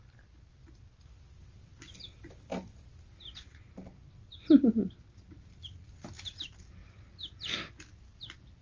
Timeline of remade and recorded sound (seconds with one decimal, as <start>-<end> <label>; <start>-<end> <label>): 0.0-8.6 recorded